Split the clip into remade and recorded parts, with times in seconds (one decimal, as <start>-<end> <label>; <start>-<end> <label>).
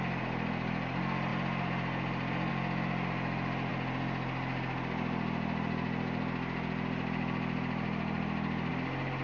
0.0-9.2 recorded